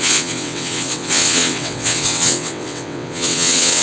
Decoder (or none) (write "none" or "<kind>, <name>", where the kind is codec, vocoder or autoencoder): vocoder, WaveNeXt